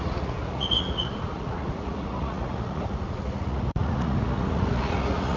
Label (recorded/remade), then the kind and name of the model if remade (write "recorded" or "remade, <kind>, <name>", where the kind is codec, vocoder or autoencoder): remade, vocoder, Vocos